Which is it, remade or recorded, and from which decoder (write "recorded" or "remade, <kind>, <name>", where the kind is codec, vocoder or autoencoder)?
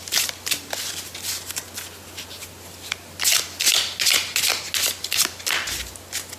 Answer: recorded